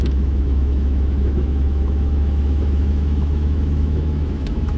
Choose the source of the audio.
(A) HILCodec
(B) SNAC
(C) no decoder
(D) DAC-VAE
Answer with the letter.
D